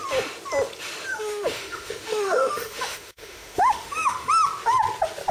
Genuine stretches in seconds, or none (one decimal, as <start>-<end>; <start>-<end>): 0.0-1.1; 4.3-5.3